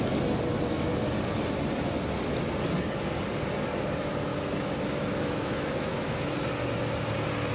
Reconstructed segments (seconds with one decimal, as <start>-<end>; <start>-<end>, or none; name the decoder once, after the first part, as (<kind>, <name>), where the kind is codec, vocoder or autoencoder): 4.3-6.3 (autoencoder, DAC-VAE)

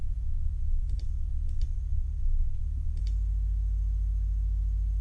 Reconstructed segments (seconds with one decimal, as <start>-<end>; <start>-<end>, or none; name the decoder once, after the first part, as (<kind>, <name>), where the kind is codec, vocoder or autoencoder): 0.0-3.0 (vocoder, BigVGAN v2)

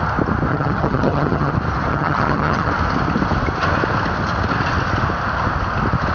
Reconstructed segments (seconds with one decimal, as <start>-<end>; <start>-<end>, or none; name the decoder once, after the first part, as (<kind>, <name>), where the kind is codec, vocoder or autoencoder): 0.5-1.5 (vocoder, HiFi-GAN); 1.9-2.7

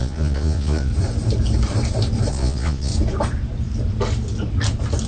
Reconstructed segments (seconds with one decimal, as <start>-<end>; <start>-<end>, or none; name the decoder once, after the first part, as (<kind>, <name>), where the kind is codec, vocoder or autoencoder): 0.0-0.9 (vocoder, Vocos); 2.3-2.9

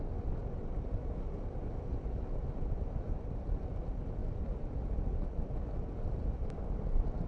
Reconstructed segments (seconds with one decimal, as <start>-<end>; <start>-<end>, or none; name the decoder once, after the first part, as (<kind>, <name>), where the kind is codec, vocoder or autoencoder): none

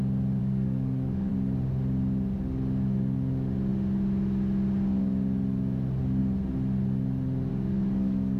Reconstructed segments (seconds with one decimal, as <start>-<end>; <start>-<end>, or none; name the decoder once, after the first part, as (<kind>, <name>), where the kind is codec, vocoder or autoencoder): 0.4-1.3 (codec, DAC); 7.5-8.4